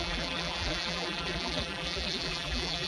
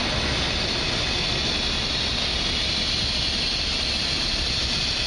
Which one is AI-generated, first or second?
first